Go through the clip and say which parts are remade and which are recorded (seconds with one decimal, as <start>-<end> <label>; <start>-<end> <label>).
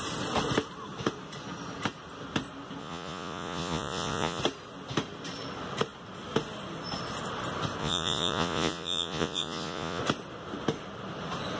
0.0-2.8 recorded; 2.8-4.4 remade; 4.4-7.8 recorded; 7.8-10.0 remade; 10.0-11.6 recorded